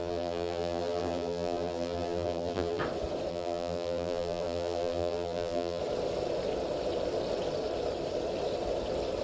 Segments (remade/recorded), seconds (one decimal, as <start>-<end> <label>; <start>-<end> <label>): 0.0-2.8 remade; 2.8-3.3 recorded; 3.3-5.8 remade; 5.8-9.2 recorded